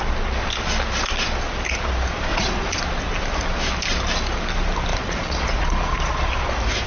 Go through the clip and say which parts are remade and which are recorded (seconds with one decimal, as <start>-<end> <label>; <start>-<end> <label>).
0.0-2.3 recorded; 2.3-2.8 remade; 2.8-4.9 recorded; 4.9-6.3 remade; 6.3-6.9 recorded